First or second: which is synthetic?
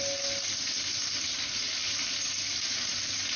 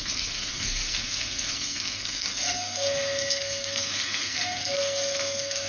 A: second